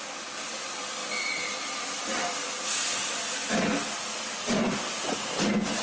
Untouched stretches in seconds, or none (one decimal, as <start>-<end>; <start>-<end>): 0.0-5.8